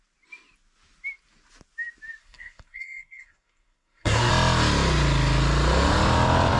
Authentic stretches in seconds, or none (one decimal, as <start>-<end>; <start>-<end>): 0.0-2.2; 4.3-6.6